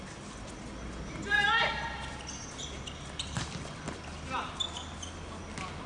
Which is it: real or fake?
real